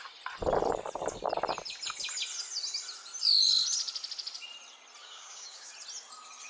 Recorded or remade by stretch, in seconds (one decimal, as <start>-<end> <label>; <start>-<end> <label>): 0.0-5.0 recorded; 5.0-5.7 remade; 5.7-6.5 recorded